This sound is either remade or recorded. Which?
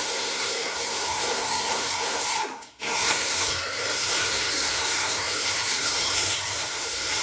remade